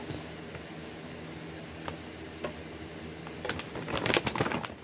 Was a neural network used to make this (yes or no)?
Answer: no